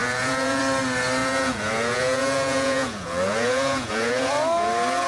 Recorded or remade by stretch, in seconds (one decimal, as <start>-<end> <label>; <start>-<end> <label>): 0.0-0.6 remade; 0.6-1.2 recorded; 1.2-4.3 remade; 4.3-5.1 recorded